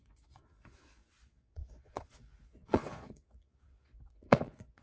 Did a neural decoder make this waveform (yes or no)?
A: yes